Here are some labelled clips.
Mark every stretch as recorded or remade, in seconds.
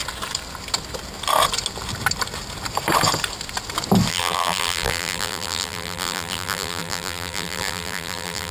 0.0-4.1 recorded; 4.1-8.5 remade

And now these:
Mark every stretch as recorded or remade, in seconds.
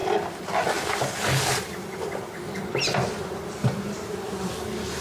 0.0-2.9 recorded; 2.9-4.5 remade; 4.5-5.0 recorded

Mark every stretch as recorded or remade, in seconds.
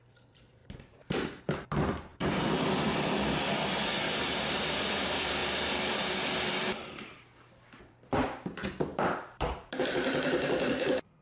0.0-5.4 remade; 5.4-7.8 recorded; 7.8-11.2 remade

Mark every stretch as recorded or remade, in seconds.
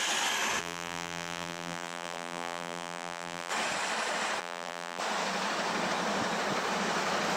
0.0-0.6 recorded; 0.6-3.5 remade; 3.5-4.4 recorded; 4.4-5.0 remade; 5.0-7.4 recorded